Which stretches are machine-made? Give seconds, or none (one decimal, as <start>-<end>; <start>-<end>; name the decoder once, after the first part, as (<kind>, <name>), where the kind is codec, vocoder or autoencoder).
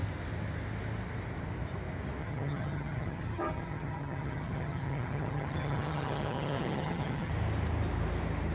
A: 2.2-7.3 (vocoder, HiFi-GAN)